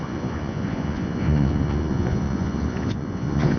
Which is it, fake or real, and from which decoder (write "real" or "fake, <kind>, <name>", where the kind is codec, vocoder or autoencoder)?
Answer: fake, vocoder, Vocos